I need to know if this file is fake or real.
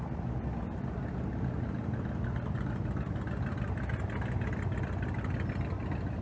real